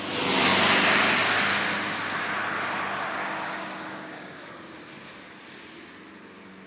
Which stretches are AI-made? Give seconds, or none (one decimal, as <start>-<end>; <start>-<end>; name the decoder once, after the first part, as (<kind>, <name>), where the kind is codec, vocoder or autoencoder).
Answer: 3.2-4.5 (codec, DAC)